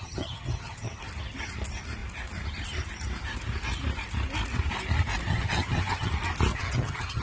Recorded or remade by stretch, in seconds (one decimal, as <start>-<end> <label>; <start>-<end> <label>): 0.0-1.0 remade; 1.0-5.3 recorded; 5.3-6.1 remade; 6.1-6.5 recorded; 6.5-7.2 remade